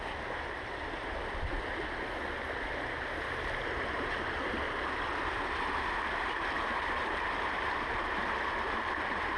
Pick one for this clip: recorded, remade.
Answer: recorded